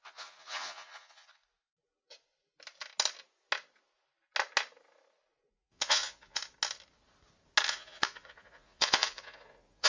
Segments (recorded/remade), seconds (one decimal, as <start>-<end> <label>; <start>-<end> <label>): 0.0-1.4 remade; 1.4-5.5 recorded; 5.5-6.4 remade; 6.4-7.7 recorded; 7.7-9.9 remade